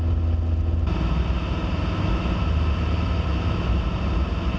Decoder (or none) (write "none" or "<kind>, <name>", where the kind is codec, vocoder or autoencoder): none